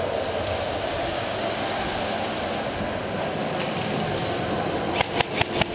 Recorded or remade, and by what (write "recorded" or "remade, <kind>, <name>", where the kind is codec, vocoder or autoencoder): recorded